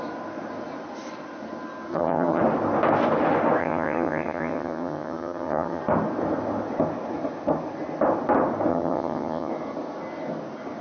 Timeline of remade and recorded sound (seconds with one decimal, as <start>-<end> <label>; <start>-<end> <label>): 0.0-1.9 recorded; 1.9-2.4 remade; 2.4-3.6 recorded; 3.6-5.8 remade; 5.8-8.7 recorded; 8.7-9.5 remade; 9.5-10.8 recorded